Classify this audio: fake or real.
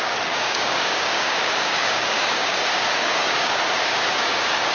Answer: fake